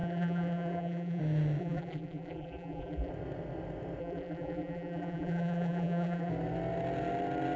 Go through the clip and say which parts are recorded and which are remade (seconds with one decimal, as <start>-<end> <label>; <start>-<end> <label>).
0.0-1.2 remade; 1.2-1.6 recorded; 1.6-3.1 remade; 3.1-4.0 recorded; 4.0-6.3 remade; 6.3-7.6 recorded